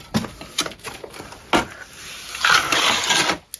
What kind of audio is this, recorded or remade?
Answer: recorded